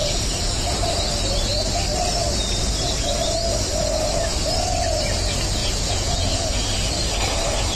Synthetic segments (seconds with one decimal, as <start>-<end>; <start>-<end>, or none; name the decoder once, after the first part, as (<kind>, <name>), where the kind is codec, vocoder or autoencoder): 0.0-0.8 (vocoder, Vocos); 5.6-6.6